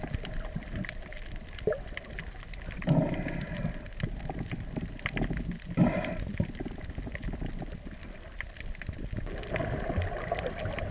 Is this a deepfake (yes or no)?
no